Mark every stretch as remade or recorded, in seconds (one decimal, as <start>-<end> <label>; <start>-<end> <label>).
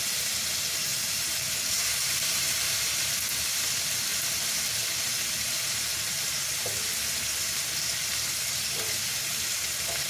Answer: 0.0-0.9 recorded; 0.9-2.9 remade; 2.9-10.1 recorded